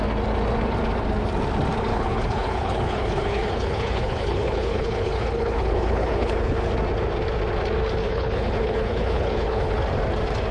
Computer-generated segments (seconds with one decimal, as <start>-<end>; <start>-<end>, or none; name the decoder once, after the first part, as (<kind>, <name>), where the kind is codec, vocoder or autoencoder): 1.9-6.6 (codec, HILCodec); 8.0-9.8